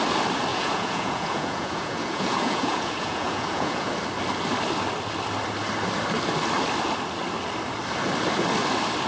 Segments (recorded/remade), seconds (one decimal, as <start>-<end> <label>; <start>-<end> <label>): 0.0-0.5 recorded; 0.5-3.9 remade; 3.9-9.1 recorded